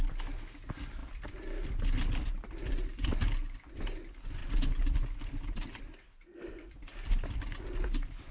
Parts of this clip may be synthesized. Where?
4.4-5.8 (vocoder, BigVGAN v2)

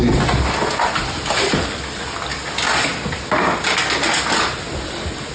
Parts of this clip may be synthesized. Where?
none

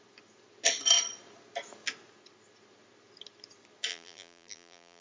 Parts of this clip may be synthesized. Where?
3.9-5.0 (vocoder, BigVGAN v2)

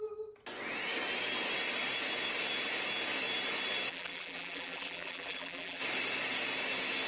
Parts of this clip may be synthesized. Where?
3.9-5.8 (vocoder, BigVGAN v2)

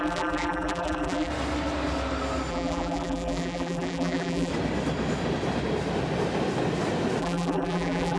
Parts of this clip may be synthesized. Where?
0.0-1.3 (vocoder, BigVGAN v2); 2.5-4.5; 7.2-8.2